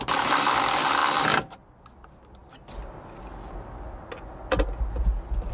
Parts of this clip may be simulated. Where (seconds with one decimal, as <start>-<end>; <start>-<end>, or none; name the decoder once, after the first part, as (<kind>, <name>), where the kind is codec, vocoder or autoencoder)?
none